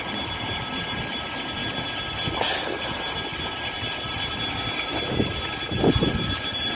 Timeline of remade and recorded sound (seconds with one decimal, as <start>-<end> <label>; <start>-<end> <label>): 0.0-6.7 recorded